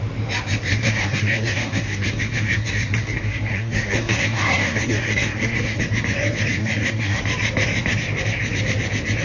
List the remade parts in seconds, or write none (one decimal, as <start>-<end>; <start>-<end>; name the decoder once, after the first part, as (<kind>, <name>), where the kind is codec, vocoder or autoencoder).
0.7-5.8 (codec, SNAC); 6.6-7.2